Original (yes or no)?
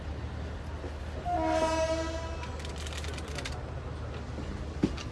yes